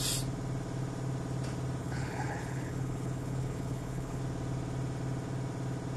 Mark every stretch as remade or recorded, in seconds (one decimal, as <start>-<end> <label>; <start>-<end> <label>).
0.0-1.8 recorded; 1.8-4.2 remade; 4.2-6.0 recorded